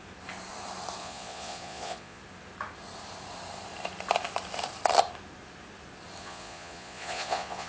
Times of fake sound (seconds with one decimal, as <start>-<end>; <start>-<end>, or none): 1.0-2.2; 6.2-7.7